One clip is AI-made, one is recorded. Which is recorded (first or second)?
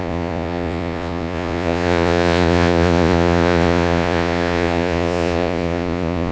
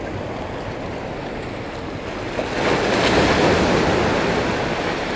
second